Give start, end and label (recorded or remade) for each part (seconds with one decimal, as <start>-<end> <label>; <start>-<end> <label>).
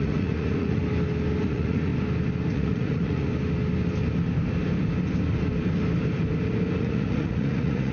0.0-0.8 remade; 0.8-1.4 recorded; 1.4-1.9 remade; 1.9-2.5 recorded; 2.5-3.3 remade; 3.3-6.8 recorded; 6.8-7.9 remade